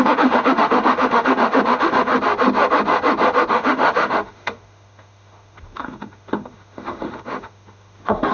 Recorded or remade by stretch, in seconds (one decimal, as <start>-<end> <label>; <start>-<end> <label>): 0.0-2.1 remade; 2.1-3.5 recorded; 3.5-8.3 remade